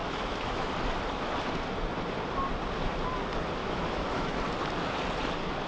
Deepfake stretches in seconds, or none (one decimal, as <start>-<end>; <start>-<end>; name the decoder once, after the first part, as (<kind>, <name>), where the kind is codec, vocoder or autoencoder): 0.0-0.7 (autoencoder, DAC-VAE); 3.6-4.4